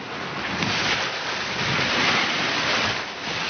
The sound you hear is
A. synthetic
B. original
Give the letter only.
B